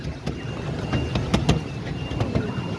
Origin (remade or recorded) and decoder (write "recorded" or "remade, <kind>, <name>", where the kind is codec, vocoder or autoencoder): recorded